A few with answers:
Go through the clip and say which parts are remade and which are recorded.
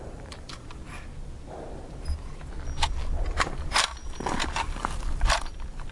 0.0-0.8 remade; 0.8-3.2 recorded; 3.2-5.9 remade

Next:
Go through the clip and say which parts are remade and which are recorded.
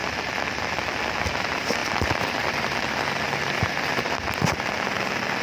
0.0-1.0 remade; 1.0-1.8 recorded; 1.8-3.7 remade; 3.7-5.4 recorded